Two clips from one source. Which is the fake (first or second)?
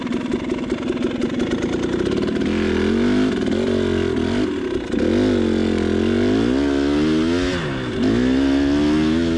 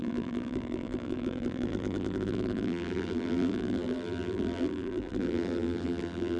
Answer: second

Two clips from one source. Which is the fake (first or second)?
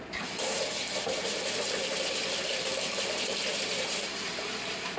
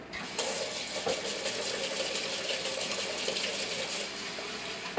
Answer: first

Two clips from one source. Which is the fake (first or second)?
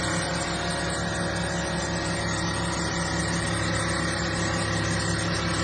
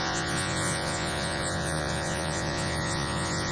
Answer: second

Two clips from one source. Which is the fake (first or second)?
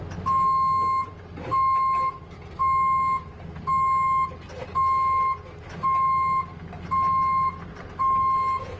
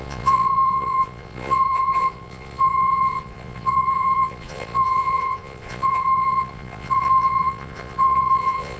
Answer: second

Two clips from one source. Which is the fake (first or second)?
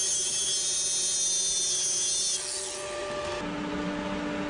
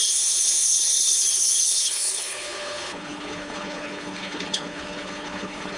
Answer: second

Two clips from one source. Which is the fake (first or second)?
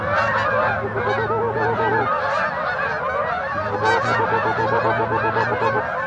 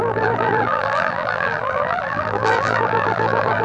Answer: second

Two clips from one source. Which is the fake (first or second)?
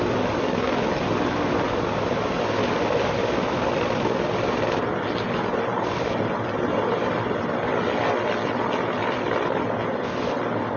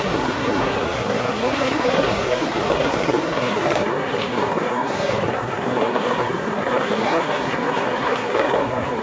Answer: second